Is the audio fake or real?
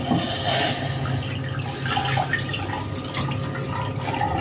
real